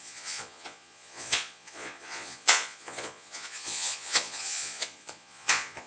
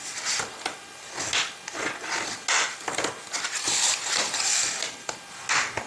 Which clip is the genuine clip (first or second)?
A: second